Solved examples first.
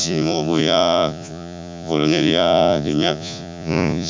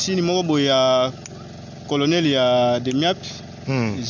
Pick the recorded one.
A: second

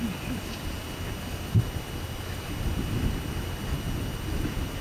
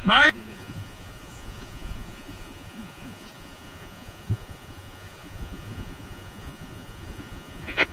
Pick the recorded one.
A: first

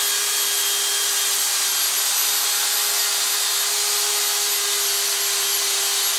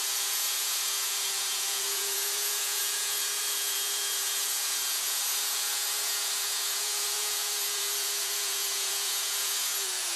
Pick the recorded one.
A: first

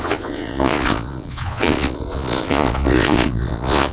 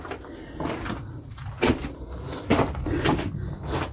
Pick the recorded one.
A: second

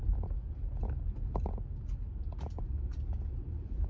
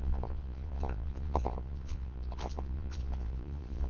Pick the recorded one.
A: first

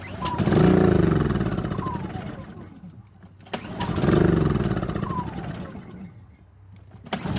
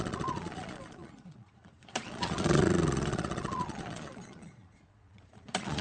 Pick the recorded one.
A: first